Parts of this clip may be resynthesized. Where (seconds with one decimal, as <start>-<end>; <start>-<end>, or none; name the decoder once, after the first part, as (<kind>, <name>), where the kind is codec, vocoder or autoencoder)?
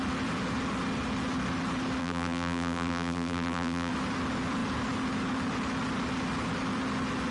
2.0-3.9 (vocoder, BigVGAN v2)